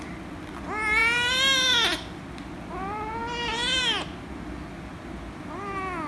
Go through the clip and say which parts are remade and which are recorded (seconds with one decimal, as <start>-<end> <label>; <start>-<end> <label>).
0.0-6.1 recorded